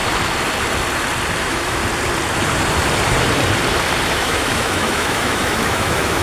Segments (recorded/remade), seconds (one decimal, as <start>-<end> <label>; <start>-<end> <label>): 0.0-1.4 recorded; 1.4-1.8 remade; 1.8-4.1 recorded; 4.1-6.2 remade